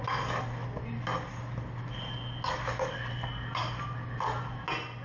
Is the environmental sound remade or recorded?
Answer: recorded